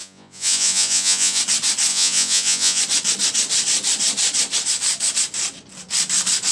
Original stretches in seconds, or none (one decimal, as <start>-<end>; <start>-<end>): 1.4-1.9; 2.8-6.5